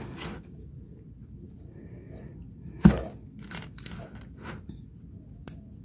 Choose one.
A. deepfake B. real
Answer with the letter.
B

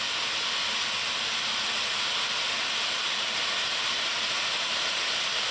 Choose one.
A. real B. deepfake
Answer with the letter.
A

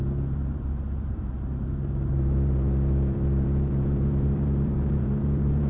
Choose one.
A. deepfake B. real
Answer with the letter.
A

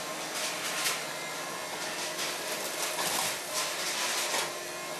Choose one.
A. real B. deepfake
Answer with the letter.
A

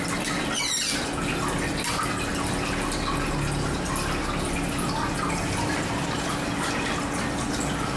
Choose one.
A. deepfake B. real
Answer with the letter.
B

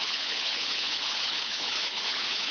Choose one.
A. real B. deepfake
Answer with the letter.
B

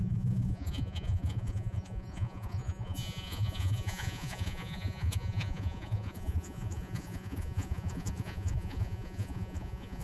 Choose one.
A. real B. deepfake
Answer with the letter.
B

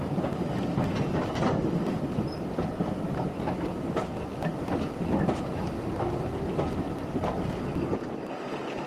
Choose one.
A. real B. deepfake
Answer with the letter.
A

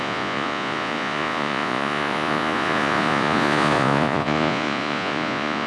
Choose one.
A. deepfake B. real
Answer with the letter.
A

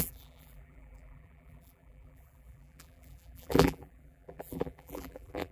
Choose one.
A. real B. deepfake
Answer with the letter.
B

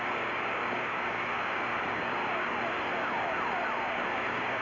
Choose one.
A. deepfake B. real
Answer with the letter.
A